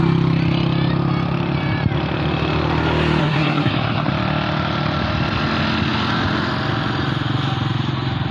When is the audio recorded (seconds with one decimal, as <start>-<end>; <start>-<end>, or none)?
0.0-3.2; 4.1-8.3

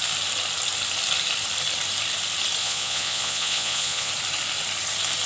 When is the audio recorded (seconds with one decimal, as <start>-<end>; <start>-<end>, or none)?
0.0-2.6; 4.1-5.3

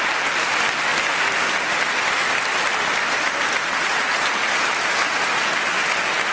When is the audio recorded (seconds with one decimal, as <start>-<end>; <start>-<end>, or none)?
0.0-6.3

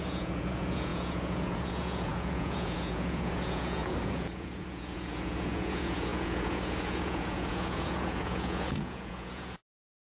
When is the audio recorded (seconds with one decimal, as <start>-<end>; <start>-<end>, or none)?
none

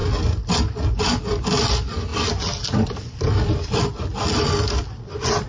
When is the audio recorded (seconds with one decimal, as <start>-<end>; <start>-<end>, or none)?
0.0-5.5

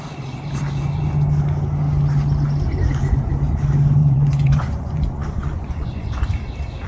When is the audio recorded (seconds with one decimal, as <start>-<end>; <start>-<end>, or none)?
0.0-4.0; 6.2-6.9

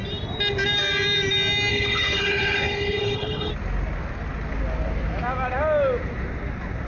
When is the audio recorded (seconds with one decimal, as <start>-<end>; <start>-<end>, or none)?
0.0-1.7; 3.5-6.9

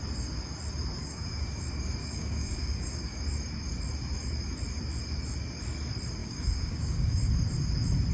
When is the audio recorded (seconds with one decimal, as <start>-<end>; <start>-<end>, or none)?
0.0-1.0; 1.6-2.0; 3.2-6.2; 7.3-8.1